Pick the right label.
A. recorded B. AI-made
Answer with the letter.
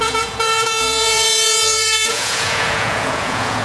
B